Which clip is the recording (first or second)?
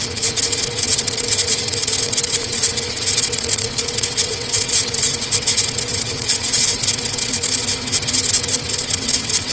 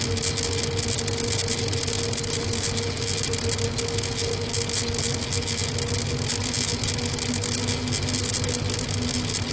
second